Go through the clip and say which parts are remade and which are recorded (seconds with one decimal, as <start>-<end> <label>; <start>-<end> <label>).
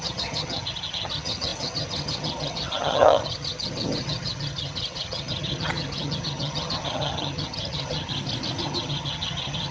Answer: 0.0-8.1 remade; 8.1-8.6 recorded; 8.6-9.7 remade